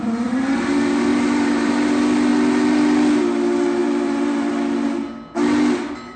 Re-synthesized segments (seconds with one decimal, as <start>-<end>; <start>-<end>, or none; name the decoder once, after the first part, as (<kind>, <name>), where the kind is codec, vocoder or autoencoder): 1.1-1.7 (vocoder, BigVGAN v2); 3.8-4.5